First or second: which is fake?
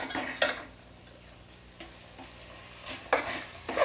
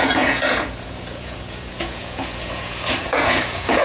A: second